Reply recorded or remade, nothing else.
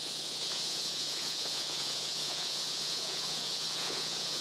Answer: remade